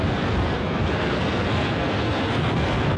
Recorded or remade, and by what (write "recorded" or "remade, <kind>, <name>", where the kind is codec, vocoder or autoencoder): remade, codec, SNAC